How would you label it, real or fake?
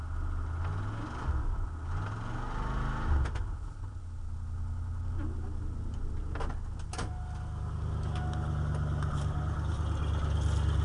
real